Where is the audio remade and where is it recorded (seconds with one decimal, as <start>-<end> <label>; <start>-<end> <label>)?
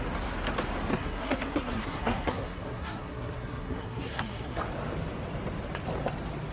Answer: 0.0-0.9 recorded; 0.9-4.6 remade; 4.6-6.5 recorded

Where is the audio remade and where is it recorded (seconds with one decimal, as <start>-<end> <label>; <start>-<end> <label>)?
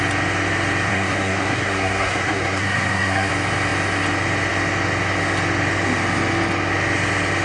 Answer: 0.0-0.9 recorded; 0.9-3.3 remade; 3.3-7.4 recorded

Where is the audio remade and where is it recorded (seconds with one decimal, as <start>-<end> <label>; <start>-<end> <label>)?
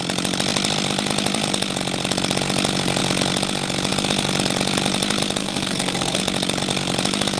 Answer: 0.0-5.4 recorded; 5.4-6.2 remade; 6.2-7.4 recorded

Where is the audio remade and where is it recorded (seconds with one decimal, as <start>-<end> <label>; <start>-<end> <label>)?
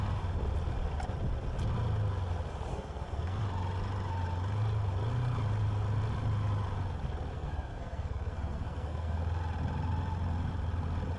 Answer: 0.0-2.7 recorded; 2.7-3.4 remade; 3.4-7.3 recorded; 7.3-9.2 remade; 9.2-11.2 recorded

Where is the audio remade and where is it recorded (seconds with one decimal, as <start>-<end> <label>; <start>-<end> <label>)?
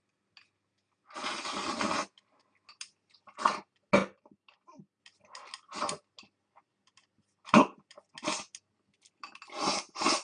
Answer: 0.0-10.2 recorded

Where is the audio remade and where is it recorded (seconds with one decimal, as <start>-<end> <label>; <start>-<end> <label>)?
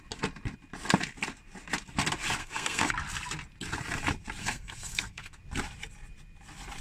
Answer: 0.0-2.4 recorded; 2.4-2.9 remade; 2.9-4.4 recorded; 4.4-5.4 remade; 5.4-6.8 recorded